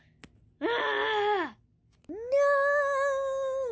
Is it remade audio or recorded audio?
recorded